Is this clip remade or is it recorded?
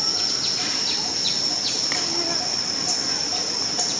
recorded